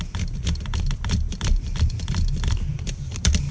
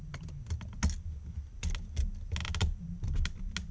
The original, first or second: second